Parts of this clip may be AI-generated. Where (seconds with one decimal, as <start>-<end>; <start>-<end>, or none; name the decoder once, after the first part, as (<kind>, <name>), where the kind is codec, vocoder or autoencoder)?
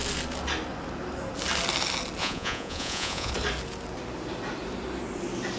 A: 2.2-3.3 (vocoder, Vocos)